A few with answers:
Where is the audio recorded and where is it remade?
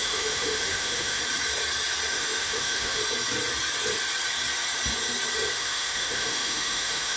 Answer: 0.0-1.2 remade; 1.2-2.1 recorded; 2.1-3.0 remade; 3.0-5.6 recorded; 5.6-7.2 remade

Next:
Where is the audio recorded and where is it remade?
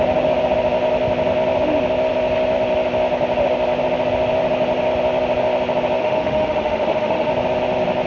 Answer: 0.0-6.0 recorded; 6.0-7.3 remade; 7.3-8.1 recorded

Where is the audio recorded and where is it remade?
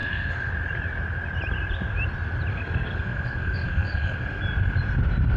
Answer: 0.0-0.5 remade; 0.5-2.5 recorded; 2.5-4.4 remade; 4.4-5.4 recorded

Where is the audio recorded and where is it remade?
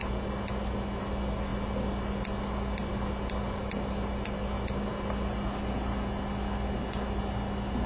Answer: 0.0-7.9 recorded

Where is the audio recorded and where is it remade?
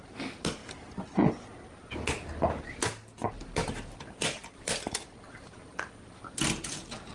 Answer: 0.0-3.6 recorded; 3.6-7.1 remade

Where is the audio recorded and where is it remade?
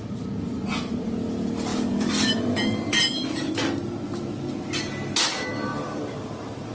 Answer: 0.0-1.7 recorded; 1.7-3.5 remade; 3.5-5.7 recorded; 5.7-6.7 remade